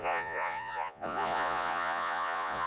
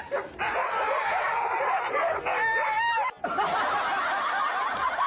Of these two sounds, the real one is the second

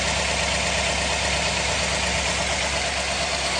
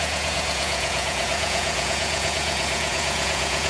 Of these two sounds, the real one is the first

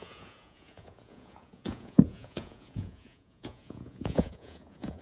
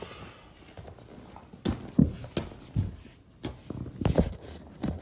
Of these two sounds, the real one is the second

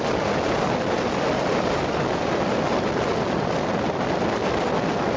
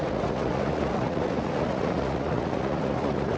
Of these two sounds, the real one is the first